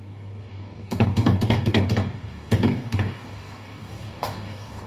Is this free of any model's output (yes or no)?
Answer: no